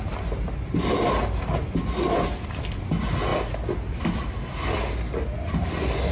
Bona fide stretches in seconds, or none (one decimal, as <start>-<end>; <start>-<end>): 0.0-6.1